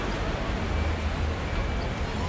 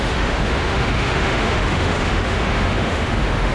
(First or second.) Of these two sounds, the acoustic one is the first